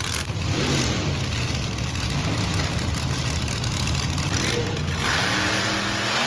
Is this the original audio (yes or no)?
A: yes